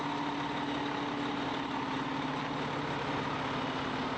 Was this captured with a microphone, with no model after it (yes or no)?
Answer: yes